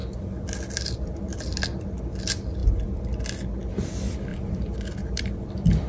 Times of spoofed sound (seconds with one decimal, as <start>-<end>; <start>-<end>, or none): 0.0-1.5; 4.3-5.9